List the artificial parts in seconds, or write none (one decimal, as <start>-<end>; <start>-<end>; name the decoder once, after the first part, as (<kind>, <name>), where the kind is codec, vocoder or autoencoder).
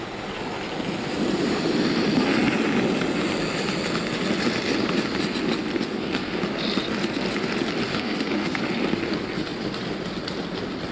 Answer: 5.9-6.4 (codec, SNAC); 7.9-8.6